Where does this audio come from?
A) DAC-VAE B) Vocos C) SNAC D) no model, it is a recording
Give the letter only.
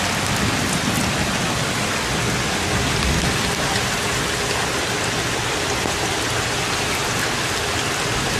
D